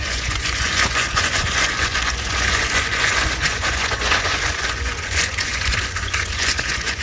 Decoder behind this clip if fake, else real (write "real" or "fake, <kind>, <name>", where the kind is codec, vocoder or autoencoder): fake, vocoder, Vocos